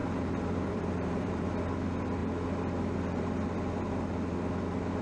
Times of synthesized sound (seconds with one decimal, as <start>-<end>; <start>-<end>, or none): 0.0-1.4